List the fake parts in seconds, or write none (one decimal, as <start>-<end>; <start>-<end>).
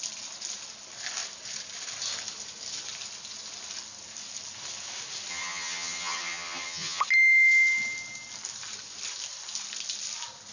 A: 5.3-7.0